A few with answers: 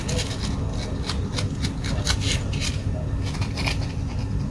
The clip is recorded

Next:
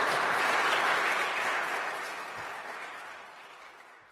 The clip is recorded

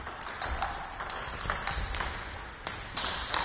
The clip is recorded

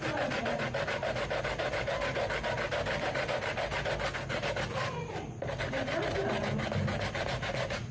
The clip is recorded